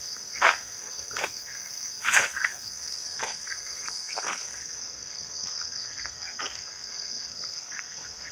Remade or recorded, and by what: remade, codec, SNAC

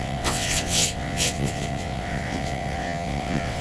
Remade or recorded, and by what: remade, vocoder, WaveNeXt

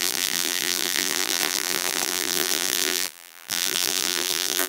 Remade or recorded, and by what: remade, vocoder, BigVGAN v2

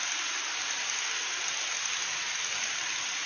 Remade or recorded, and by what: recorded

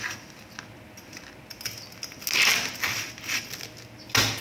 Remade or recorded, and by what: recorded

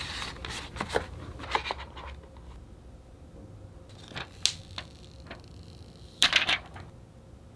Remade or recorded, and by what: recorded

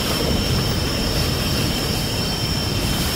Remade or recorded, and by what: remade, vocoder, BigVGAN v2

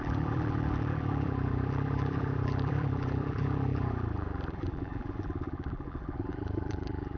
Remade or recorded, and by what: remade, vocoder, BigVGAN v2